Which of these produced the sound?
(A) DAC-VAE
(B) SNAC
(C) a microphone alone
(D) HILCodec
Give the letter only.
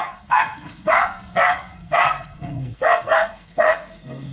B